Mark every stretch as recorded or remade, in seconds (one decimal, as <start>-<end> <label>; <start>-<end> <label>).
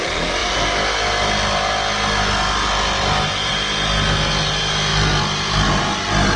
0.0-6.4 recorded